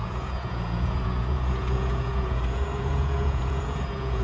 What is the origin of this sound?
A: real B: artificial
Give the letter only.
B